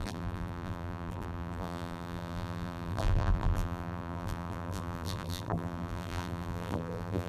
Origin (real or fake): fake